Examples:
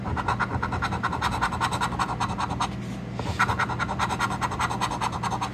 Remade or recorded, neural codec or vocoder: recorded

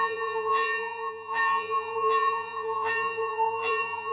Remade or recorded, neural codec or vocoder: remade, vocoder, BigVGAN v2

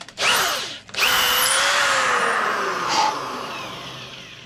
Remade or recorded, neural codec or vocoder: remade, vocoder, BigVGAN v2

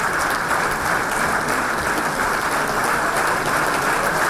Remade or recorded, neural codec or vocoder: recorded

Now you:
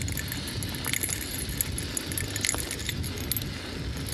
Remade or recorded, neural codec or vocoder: recorded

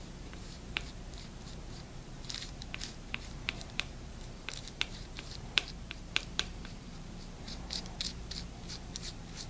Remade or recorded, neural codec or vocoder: remade, vocoder, BigVGAN v2